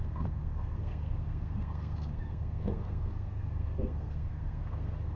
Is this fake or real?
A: fake